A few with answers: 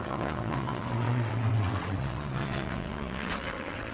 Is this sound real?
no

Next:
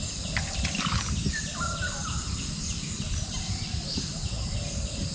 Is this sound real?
yes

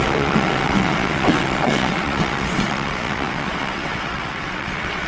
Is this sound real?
no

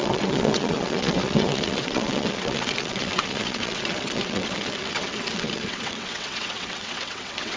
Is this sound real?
no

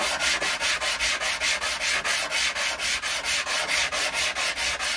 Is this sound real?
yes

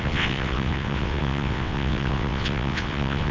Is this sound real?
no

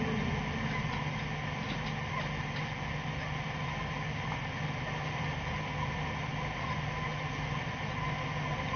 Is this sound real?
yes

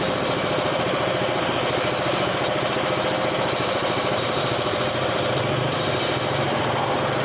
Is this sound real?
yes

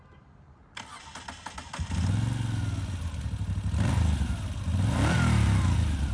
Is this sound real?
yes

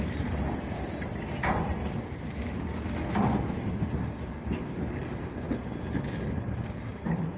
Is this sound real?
yes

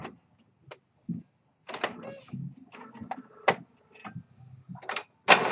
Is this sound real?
yes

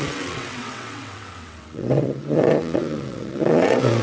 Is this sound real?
no